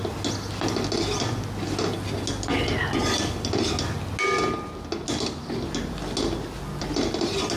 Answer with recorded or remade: recorded